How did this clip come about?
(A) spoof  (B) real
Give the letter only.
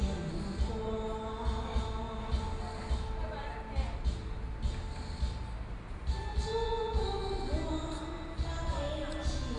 B